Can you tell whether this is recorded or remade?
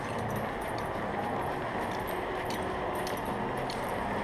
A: recorded